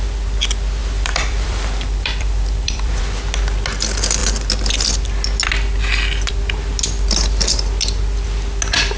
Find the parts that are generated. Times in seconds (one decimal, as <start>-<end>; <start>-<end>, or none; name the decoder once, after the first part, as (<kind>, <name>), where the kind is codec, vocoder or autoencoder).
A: 0.8-3.0 (vocoder, BigVGAN v2)